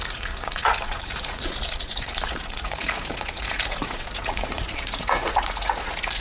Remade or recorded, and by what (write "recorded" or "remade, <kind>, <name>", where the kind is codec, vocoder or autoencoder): remade, vocoder, Vocos